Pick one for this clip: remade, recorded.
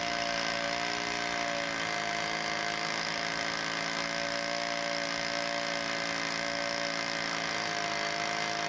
recorded